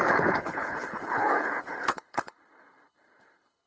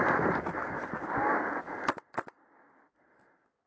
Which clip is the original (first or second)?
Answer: second